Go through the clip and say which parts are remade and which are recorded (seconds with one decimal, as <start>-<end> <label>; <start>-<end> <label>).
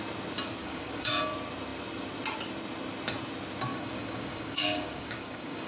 0.0-0.6 recorded; 0.6-1.2 remade; 1.2-3.7 recorded; 3.7-5.7 remade